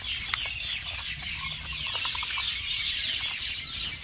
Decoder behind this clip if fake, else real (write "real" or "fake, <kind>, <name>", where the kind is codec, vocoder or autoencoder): real